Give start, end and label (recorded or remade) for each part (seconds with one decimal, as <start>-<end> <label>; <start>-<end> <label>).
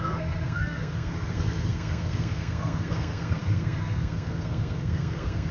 0.0-5.5 remade